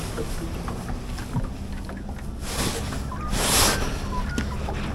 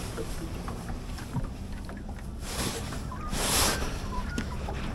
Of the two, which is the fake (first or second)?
second